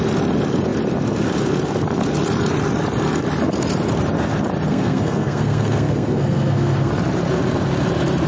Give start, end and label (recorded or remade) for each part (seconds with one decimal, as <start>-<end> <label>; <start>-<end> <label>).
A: 0.0-4.7 recorded; 4.7-6.9 remade; 6.9-8.3 recorded